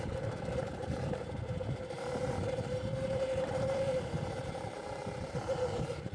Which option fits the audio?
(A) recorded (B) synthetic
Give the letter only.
B